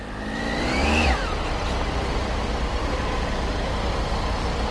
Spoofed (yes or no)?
no